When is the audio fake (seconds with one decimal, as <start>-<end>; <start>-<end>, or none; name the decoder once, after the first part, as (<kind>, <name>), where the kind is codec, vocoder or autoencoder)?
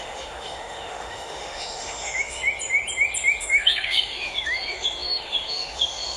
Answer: 0.0-2.4 (autoencoder, DAC-VAE); 3.4-6.2